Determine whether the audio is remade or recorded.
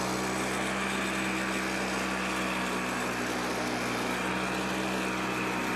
recorded